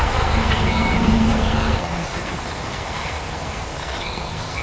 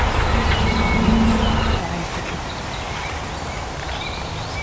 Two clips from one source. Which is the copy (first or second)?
first